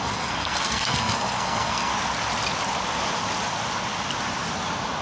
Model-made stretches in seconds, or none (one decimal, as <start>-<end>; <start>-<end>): 0.0-1.9